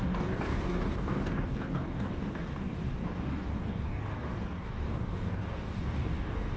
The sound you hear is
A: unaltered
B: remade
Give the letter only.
B